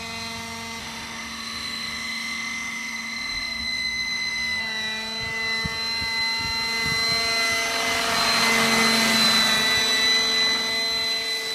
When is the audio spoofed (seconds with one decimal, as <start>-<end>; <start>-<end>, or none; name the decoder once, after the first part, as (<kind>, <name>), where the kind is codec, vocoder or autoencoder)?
0.8-4.6 (autoencoder, DAC-VAE)